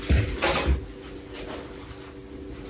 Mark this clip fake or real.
real